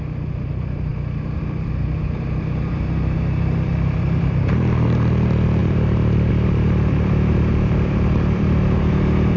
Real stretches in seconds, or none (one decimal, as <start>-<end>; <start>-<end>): none

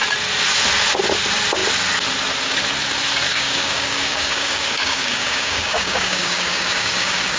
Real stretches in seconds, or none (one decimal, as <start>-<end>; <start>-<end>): 0.0-3.3

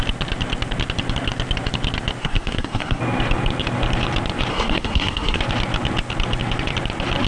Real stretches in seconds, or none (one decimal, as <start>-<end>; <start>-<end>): 0.0-2.2; 3.0-4.5; 5.4-7.3

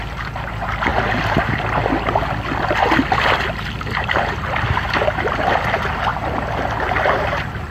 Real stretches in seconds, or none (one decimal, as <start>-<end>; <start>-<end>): 0.0-7.7

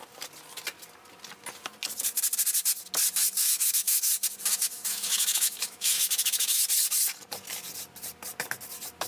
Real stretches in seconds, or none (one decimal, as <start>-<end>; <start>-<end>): 0.0-3.4; 4.1-4.5; 6.6-9.1